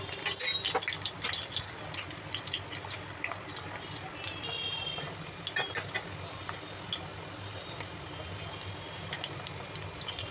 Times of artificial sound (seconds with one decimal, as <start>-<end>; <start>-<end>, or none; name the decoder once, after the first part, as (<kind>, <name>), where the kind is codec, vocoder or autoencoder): none